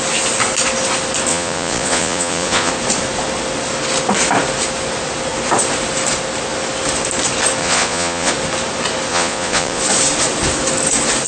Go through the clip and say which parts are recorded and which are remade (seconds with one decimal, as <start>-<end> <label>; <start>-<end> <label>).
0.0-1.3 recorded; 1.3-2.7 remade; 2.7-7.6 recorded; 7.6-8.3 remade; 8.3-9.1 recorded; 9.1-9.8 remade; 9.8-11.3 recorded